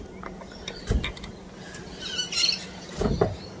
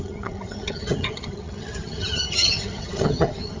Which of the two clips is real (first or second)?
first